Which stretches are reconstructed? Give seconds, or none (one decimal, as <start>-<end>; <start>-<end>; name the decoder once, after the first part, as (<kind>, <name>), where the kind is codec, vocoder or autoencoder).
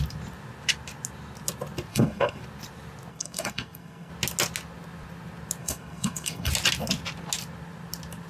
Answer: 1.9-2.4 (codec, SNAC); 3.1-4.1; 5.6-6.5